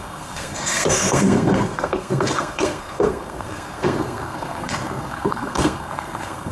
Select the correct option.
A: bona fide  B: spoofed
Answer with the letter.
B